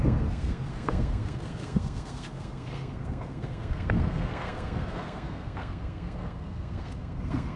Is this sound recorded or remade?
remade